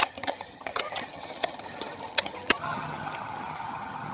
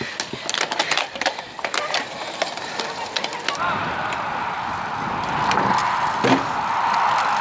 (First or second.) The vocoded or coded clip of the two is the first